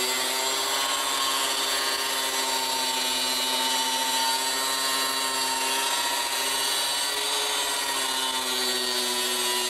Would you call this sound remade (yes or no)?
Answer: no